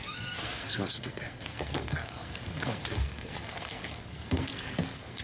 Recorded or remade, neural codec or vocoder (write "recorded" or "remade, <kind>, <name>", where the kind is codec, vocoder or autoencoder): remade, codec, SNAC